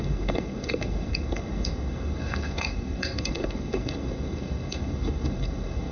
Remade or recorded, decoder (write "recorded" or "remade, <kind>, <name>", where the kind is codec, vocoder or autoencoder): remade, codec, SNAC